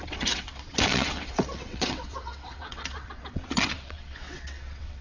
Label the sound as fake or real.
fake